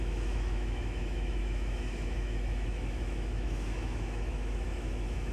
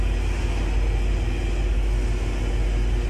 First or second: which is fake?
first